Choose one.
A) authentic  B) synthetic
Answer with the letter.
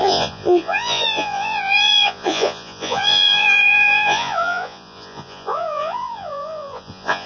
B